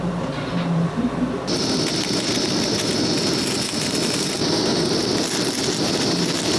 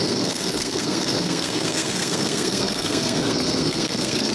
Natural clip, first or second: first